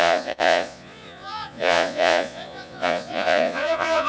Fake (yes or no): yes